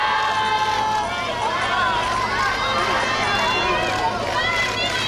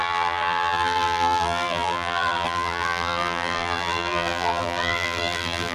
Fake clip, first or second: second